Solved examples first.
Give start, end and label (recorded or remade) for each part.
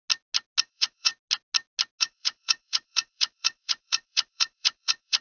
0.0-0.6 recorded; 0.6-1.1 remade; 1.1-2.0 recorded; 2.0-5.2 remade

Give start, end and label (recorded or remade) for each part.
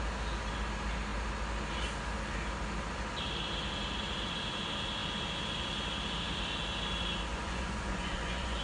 0.0-7.3 recorded; 7.3-8.6 remade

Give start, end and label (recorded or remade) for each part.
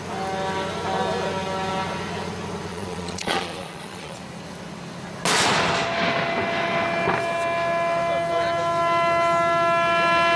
0.0-2.7 recorded; 2.7-4.2 remade; 4.2-10.4 recorded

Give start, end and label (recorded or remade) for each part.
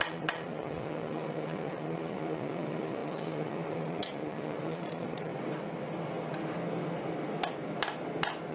0.0-5.3 remade; 5.3-8.5 recorded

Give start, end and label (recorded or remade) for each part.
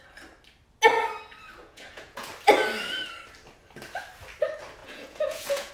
0.0-1.6 recorded; 1.6-2.3 remade; 2.3-4.8 recorded; 4.8-5.7 remade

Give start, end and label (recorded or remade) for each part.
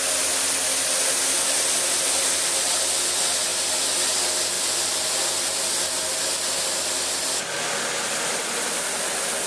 0.0-9.5 recorded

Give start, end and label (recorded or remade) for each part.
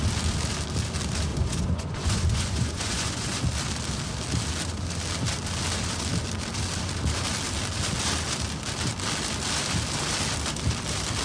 0.0-1.3 recorded; 1.3-3.4 remade; 3.4-11.2 recorded